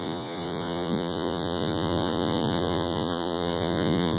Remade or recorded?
remade